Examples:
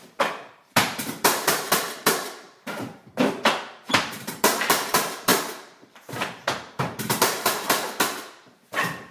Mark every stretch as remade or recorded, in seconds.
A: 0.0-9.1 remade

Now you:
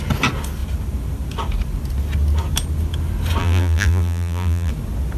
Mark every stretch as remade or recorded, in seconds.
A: 0.0-3.4 recorded; 3.4-4.7 remade; 4.7-5.2 recorded

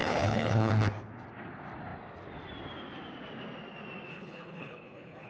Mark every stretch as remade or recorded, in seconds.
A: 0.0-0.7 remade; 0.7-4.1 recorded; 4.1-5.3 remade

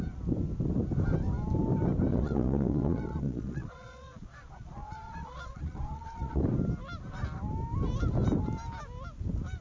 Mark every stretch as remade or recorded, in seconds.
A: 0.0-2.1 recorded; 2.1-6.4 remade; 6.4-9.6 recorded

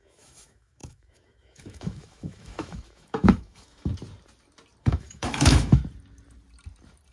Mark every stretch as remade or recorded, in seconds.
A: 0.0-3.9 remade; 3.9-4.8 recorded; 4.8-5.8 remade; 5.8-7.1 recorded

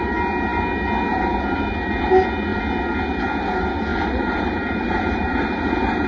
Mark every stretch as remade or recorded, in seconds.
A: 0.0-3.9 recorded; 3.9-6.1 remade